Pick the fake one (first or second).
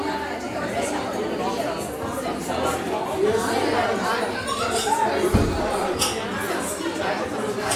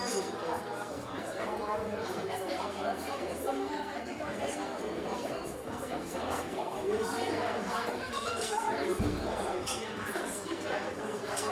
second